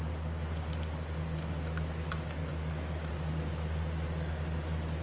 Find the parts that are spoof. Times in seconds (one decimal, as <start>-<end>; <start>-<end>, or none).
2.5-3.1